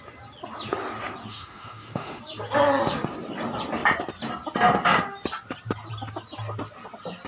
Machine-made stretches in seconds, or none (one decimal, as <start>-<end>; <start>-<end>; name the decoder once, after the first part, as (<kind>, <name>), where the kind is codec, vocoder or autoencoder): 1.3-2.2 (autoencoder, DAC-VAE)